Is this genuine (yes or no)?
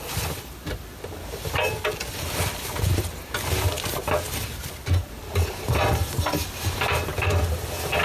yes